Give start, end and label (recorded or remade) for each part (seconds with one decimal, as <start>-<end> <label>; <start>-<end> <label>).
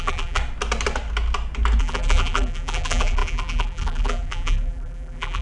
0.0-0.4 remade; 0.4-1.8 recorded; 1.8-5.4 remade